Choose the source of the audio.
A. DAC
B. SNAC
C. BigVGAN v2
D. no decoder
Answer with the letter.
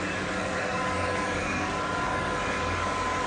A